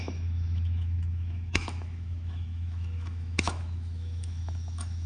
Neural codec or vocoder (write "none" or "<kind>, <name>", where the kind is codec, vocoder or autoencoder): autoencoder, DAC-VAE